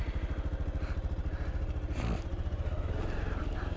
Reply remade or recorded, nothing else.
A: recorded